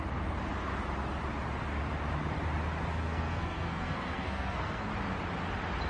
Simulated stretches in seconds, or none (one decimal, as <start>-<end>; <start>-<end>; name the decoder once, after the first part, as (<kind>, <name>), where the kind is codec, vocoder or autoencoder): 2.9-4.9 (codec, SNAC)